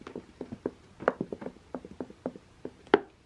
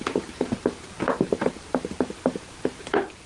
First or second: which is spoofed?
second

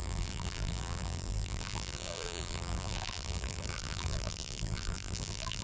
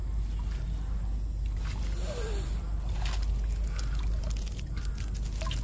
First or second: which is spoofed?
first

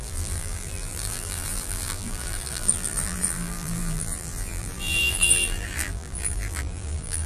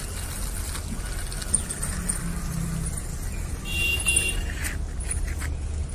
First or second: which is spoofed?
first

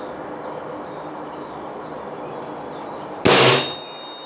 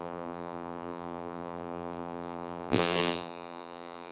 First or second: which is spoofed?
second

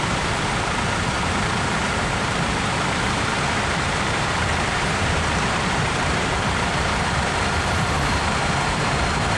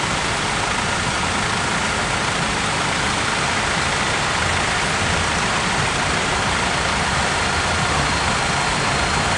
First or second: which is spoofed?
first